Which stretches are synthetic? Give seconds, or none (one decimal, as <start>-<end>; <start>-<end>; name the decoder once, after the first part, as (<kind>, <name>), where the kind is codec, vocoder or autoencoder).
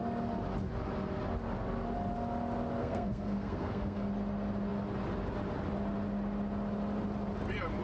2.8-4.1 (codec, SNAC)